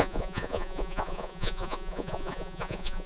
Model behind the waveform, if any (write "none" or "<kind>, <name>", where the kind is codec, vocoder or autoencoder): vocoder, Vocos